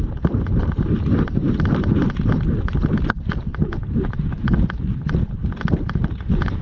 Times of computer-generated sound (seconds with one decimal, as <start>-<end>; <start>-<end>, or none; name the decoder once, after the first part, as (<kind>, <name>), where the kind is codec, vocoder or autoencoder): 5.4-6.1 (vocoder, BigVGAN v2)